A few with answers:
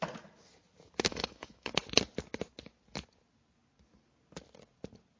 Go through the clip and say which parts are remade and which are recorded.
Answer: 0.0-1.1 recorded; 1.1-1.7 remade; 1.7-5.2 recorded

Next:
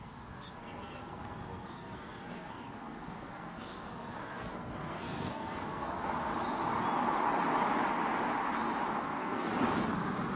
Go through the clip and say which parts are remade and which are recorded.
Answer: 0.0-6.3 remade; 6.3-9.0 recorded; 9.0-9.5 remade; 9.5-10.4 recorded

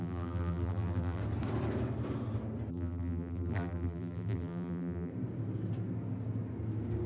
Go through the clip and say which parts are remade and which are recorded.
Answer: 0.0-1.2 remade; 1.2-2.7 recorded; 2.7-5.1 remade; 5.1-7.1 recorded

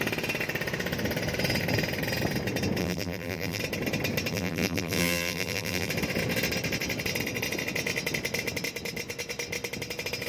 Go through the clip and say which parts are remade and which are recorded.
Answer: 0.0-2.8 recorded; 2.8-3.6 remade; 3.6-4.3 recorded; 4.3-5.9 remade; 5.9-10.3 recorded